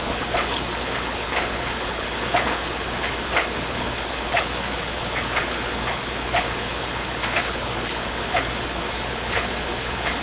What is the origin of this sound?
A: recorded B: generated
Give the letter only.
B